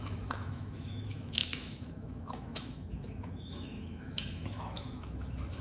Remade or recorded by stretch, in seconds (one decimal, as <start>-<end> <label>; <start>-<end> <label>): 0.0-5.6 remade